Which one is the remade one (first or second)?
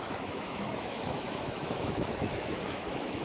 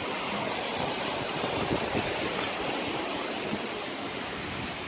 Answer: first